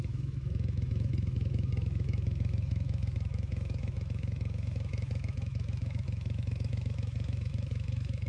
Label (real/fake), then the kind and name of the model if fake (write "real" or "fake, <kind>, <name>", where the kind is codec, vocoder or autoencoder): fake, autoencoder, DAC-VAE